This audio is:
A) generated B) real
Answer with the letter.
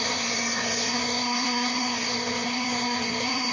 A